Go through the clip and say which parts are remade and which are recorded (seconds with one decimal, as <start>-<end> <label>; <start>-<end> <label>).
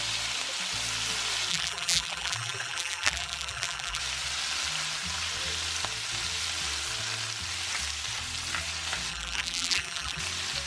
0.0-1.5 recorded; 1.5-4.0 remade; 4.0-9.1 recorded; 9.1-10.2 remade; 10.2-10.7 recorded